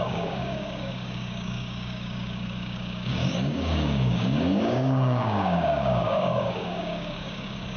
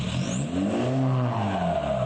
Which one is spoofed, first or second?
first